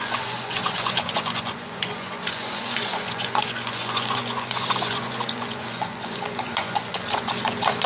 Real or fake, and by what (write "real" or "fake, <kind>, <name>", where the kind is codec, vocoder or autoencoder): fake, vocoder, Vocos